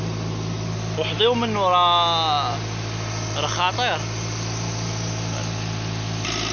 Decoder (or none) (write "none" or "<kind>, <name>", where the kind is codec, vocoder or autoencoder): none